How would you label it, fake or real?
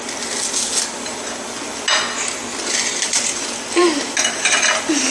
real